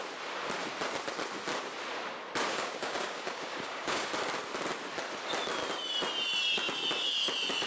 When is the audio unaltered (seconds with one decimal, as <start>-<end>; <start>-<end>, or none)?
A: 0.0-2.5; 4.1-7.7